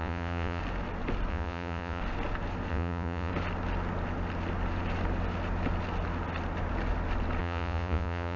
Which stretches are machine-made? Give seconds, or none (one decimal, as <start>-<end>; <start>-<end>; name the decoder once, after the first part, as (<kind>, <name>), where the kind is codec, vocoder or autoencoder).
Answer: 0.0-0.6 (vocoder, Vocos); 1.3-2.0; 2.7-3.3; 7.4-8.4